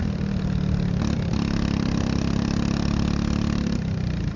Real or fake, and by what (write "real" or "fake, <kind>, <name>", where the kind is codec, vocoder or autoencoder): real